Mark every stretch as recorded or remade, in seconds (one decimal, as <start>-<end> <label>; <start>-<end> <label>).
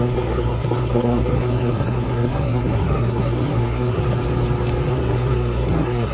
0.0-4.0 remade; 4.0-4.9 recorded; 4.9-6.1 remade